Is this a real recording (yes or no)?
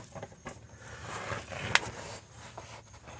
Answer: yes